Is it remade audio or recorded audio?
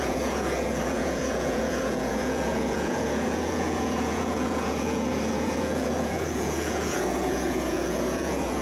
remade